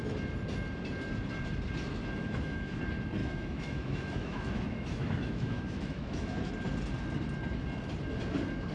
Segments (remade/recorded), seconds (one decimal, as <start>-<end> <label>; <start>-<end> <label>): 0.0-2.2 recorded; 2.2-2.8 remade; 2.8-3.2 recorded; 3.2-6.5 remade; 6.5-8.7 recorded